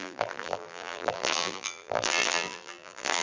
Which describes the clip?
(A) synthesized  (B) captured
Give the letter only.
A